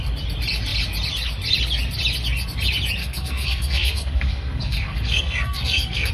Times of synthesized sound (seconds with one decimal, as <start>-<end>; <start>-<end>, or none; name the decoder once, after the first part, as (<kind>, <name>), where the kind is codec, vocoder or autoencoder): 3.0-6.1 (codec, SNAC)